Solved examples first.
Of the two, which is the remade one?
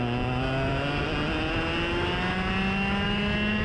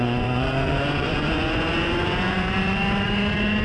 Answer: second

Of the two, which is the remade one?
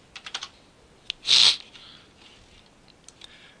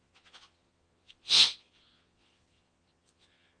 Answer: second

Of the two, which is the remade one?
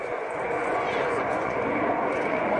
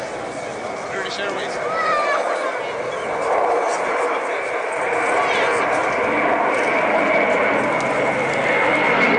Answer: first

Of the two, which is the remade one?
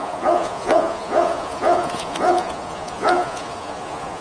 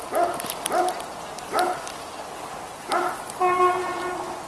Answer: first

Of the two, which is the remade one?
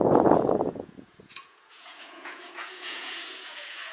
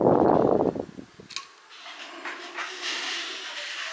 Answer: first